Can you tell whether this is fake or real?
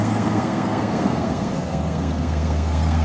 fake